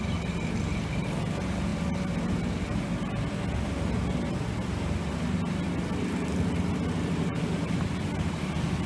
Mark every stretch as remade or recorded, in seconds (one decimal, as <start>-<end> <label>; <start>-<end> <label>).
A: 0.0-8.9 recorded